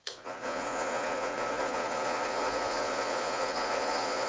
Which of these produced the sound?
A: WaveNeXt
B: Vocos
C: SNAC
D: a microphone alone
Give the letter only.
B